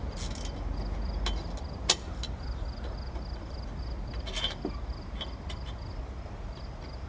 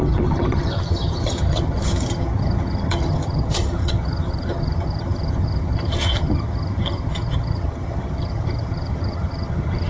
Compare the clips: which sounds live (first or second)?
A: first